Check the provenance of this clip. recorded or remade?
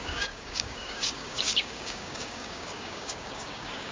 remade